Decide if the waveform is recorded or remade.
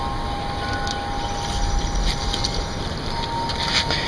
recorded